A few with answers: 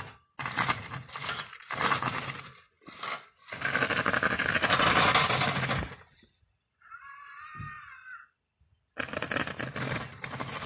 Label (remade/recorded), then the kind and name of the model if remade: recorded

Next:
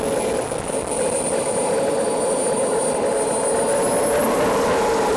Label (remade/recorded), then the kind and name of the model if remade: recorded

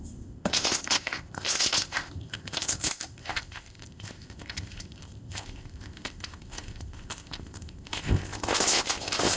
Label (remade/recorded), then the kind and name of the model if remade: remade, codec, ZipCodec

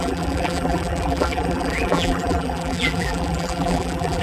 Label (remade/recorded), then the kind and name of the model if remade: remade, vocoder, BigVGAN v2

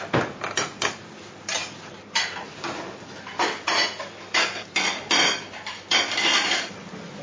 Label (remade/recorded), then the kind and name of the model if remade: recorded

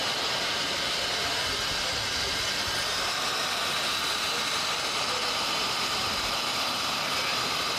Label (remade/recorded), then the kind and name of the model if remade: remade, vocoder, BigVGAN v2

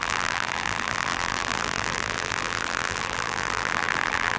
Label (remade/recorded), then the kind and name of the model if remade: remade, vocoder, BigVGAN v2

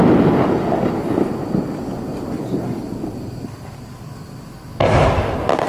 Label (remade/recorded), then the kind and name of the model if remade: recorded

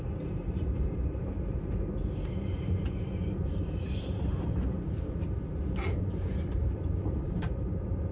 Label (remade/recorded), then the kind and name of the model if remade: remade, vocoder, BigVGAN v2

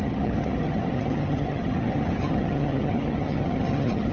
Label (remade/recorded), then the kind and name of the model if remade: remade, vocoder, HiFi-GAN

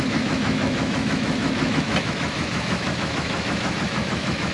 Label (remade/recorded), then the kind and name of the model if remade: remade, autoencoder, DAC-VAE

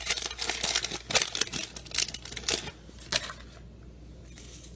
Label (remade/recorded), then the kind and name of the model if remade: recorded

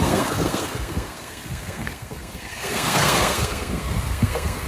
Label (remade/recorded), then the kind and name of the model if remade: remade, codec, SNAC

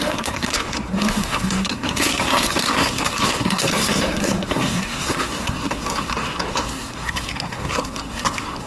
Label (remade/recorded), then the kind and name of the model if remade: remade, codec, SNAC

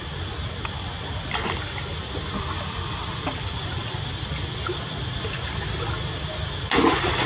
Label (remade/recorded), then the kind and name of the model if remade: recorded